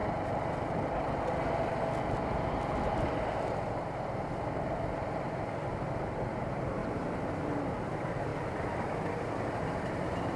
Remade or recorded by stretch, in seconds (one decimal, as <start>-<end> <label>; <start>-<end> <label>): 0.0-10.4 recorded